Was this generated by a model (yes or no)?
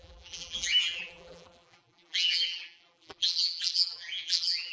yes